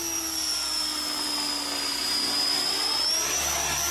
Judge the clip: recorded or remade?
recorded